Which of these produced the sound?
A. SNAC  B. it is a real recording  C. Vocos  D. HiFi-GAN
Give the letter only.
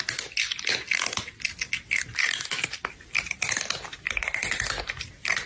B